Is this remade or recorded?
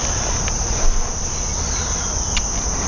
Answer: recorded